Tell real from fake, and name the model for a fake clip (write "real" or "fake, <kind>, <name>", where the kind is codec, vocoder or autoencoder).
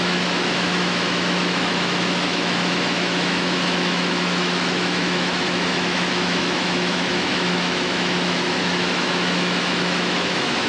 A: fake, autoencoder, DAC-VAE